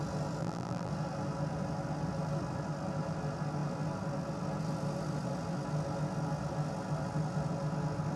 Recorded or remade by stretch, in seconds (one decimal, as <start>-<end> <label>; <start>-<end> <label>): 0.0-0.4 recorded; 0.4-0.9 remade; 0.9-8.2 recorded